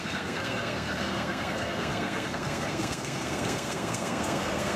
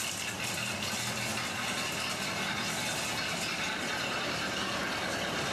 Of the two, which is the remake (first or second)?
first